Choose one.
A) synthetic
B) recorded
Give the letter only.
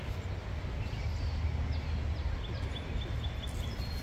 B